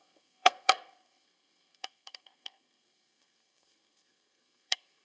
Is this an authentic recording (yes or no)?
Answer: no